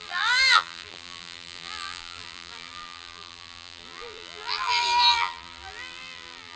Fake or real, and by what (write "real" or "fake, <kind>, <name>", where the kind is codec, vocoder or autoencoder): fake, vocoder, BigVGAN v2